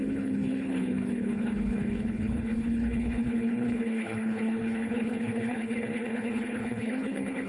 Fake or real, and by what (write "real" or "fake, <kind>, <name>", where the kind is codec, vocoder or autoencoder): fake, codec, HILCodec